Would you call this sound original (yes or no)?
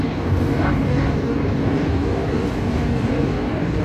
no